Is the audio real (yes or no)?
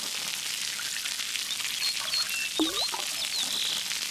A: yes